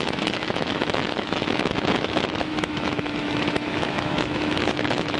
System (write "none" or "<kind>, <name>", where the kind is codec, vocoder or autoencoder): autoencoder, DAC-VAE